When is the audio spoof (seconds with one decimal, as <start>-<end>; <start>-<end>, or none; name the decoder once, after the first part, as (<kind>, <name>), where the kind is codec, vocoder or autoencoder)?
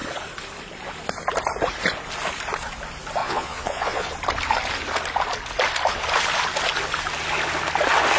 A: 3.2-4.1 (vocoder, Vocos)